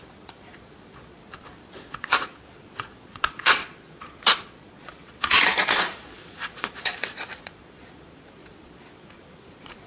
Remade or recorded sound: remade